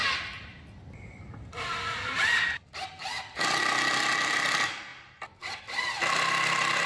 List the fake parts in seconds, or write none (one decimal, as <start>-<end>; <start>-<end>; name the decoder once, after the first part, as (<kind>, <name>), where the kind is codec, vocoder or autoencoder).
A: none